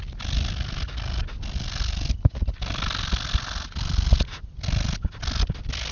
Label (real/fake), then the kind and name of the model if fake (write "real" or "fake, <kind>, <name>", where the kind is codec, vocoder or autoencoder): real